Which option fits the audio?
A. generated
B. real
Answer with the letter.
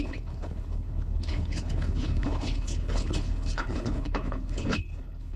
A